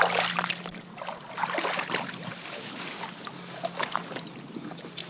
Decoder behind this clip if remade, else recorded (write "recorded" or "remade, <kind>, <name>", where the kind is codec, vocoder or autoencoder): recorded